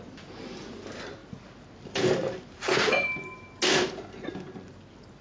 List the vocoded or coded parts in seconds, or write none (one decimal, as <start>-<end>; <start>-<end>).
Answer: none